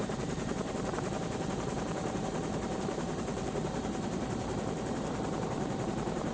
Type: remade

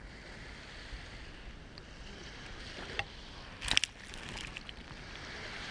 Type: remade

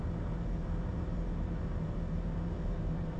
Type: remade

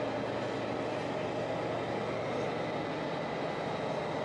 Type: recorded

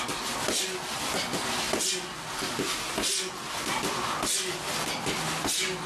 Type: recorded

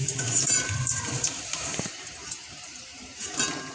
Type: remade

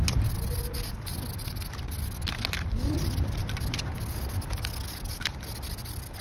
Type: recorded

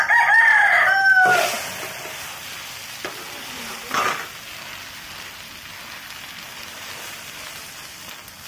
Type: recorded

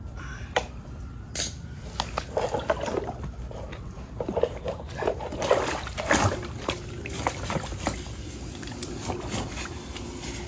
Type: recorded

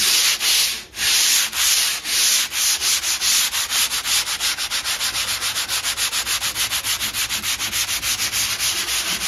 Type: recorded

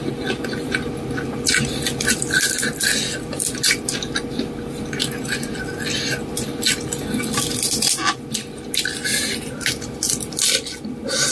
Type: recorded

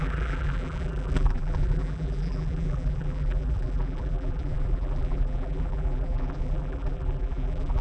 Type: remade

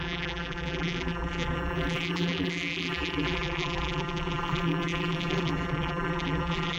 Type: remade